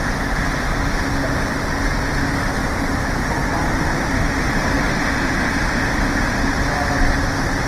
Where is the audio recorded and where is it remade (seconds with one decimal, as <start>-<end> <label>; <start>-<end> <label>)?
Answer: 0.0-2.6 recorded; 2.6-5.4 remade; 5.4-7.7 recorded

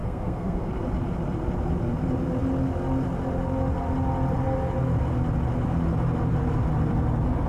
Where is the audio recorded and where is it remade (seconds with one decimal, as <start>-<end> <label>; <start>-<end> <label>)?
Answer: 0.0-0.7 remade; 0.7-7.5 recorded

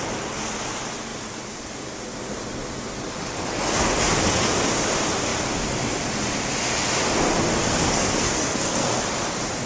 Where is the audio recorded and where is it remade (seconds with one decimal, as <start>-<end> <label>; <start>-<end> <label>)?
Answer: 0.0-7.6 recorded; 7.6-9.0 remade; 9.0-9.7 recorded

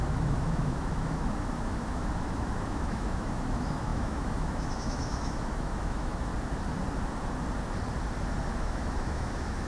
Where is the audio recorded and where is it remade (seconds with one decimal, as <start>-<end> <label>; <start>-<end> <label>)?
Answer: 0.0-6.3 remade; 6.3-8.6 recorded; 8.6-9.7 remade

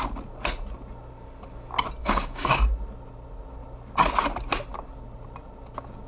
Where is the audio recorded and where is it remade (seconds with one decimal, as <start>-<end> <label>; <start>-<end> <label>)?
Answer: 0.0-2.0 recorded; 2.0-2.6 remade; 2.6-6.1 recorded

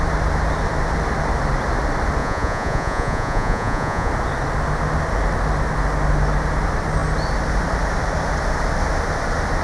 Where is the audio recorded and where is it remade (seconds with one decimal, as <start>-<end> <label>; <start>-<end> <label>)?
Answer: 0.0-2.2 recorded; 2.2-4.1 remade; 4.1-9.6 recorded

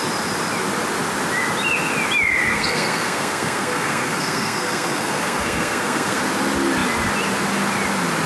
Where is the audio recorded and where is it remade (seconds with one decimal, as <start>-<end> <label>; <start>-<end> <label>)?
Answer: 0.0-2.5 recorded; 2.5-6.2 remade; 6.2-8.3 recorded

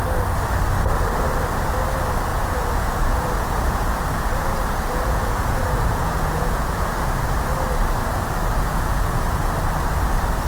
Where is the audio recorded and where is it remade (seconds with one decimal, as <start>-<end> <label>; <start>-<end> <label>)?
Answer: 0.0-2.3 recorded; 2.3-7.0 remade; 7.0-8.7 recorded; 8.7-9.5 remade; 9.5-10.5 recorded